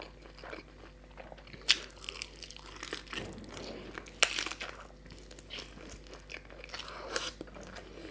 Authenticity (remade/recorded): recorded